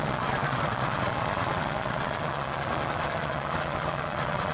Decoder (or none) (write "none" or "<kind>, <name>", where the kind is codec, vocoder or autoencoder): vocoder, Vocos